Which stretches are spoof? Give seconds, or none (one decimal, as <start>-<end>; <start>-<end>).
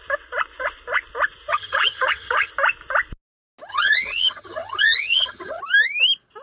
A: 1.5-2.5; 3.7-5.6